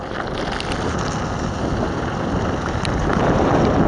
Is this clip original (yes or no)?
yes